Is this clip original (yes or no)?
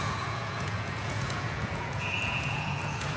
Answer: no